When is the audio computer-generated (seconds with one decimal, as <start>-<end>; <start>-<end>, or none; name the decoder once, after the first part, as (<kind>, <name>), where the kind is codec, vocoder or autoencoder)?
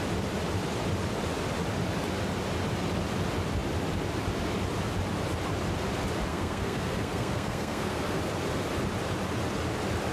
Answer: 6.3-8.2 (codec, SNAC)